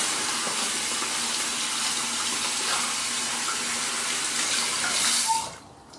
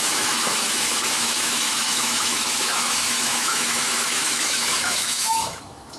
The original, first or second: first